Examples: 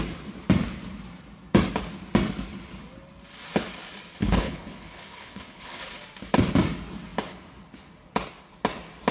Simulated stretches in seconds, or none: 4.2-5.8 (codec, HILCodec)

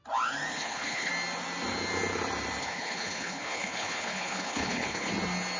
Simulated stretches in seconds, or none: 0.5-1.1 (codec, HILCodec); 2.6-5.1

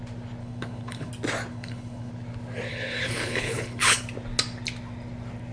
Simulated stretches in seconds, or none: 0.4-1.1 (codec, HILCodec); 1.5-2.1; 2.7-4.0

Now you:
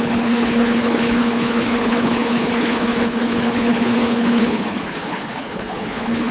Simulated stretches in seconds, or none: 0.0-6.3 (codec, HILCodec)

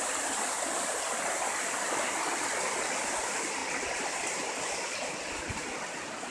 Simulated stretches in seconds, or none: none

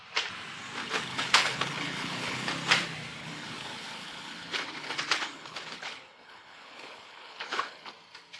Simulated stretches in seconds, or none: 0.8-2.5 (codec, HILCodec); 3.2-7.9

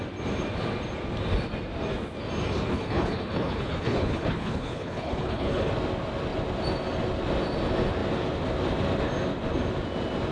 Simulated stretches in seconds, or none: 2.7-5.7 (codec, HILCodec)

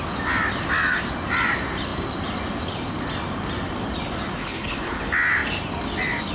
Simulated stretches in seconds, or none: 4.4-5.0 (codec, HILCodec)